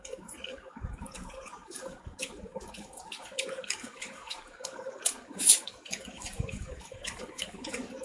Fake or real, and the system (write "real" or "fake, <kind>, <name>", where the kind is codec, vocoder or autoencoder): fake, codec, DAC